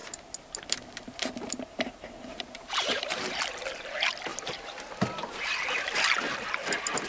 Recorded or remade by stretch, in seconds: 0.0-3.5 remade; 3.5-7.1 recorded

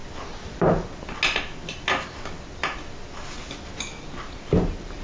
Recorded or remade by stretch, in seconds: 0.0-5.0 recorded

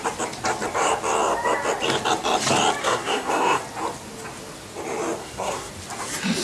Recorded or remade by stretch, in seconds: 0.0-2.8 recorded; 2.8-3.6 remade; 3.6-5.2 recorded; 5.2-5.7 remade; 5.7-6.4 recorded

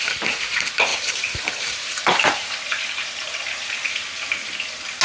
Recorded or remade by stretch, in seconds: 0.0-0.9 recorded; 0.9-3.9 remade; 3.9-5.0 recorded